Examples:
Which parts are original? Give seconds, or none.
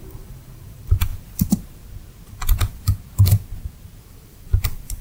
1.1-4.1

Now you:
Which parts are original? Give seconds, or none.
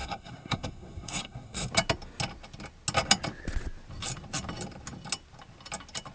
1.7-6.1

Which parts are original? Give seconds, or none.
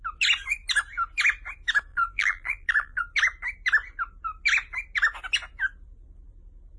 0.0-1.9; 3.0-6.8